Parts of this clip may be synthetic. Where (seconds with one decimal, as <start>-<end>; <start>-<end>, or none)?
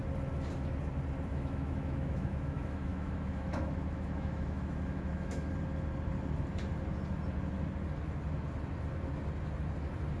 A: 1.3-5.5